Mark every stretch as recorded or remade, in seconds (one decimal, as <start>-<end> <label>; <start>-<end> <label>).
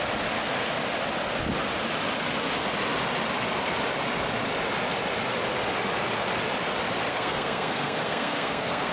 0.0-7.1 recorded; 7.1-8.9 remade